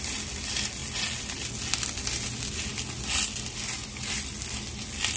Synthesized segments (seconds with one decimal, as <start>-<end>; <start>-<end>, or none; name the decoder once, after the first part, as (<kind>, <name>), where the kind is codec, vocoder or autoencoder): 2.7-4.3 (vocoder, BigVGAN v2)